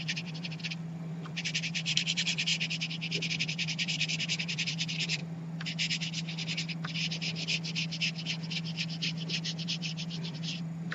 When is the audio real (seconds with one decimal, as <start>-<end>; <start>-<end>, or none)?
0.6-1.1; 2.5-3.3; 5.2-9.6